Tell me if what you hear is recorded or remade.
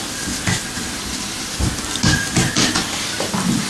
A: recorded